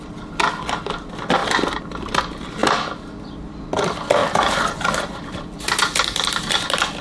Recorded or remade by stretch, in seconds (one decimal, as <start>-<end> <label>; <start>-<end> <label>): 0.0-1.4 recorded; 1.4-2.2 remade; 2.2-4.2 recorded; 4.2-7.0 remade